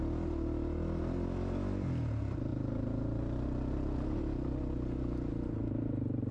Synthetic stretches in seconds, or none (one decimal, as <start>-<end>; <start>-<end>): none

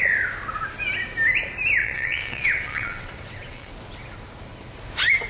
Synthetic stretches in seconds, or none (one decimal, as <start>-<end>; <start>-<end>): 1.8-3.7

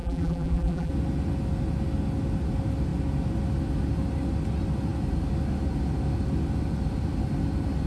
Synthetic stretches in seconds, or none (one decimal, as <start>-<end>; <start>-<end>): 0.0-0.9

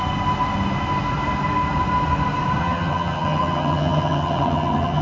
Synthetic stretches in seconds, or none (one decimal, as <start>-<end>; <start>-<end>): 2.6-5.0